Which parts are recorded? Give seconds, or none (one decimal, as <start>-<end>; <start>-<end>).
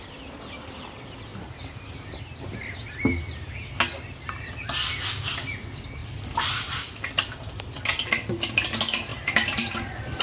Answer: 0.0-1.3; 3.2-6.0; 8.1-9.1